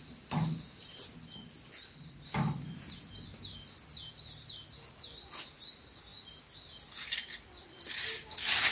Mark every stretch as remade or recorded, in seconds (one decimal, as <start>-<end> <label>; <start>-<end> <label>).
0.0-8.7 recorded